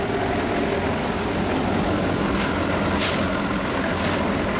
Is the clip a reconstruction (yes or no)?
no